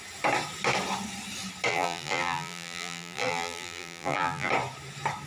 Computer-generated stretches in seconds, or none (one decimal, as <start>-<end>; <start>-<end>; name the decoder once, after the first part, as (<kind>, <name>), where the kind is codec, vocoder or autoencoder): 1.7-4.5 (vocoder, BigVGAN v2)